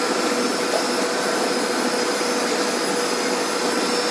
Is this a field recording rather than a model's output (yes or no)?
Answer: yes